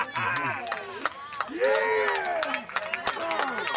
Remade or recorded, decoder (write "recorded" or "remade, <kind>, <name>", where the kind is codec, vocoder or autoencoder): recorded